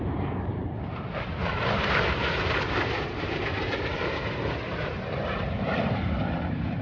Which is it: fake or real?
fake